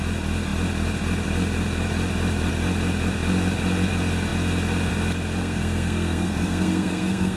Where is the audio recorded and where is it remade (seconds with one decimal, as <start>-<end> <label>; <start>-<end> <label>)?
0.0-5.4 recorded; 5.4-7.4 remade